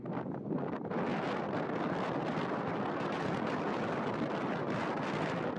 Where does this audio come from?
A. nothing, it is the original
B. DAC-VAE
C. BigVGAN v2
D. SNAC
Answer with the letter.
A